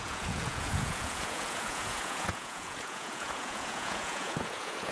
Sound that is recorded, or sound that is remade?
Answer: remade